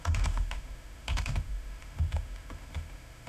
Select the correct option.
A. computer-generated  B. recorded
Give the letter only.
A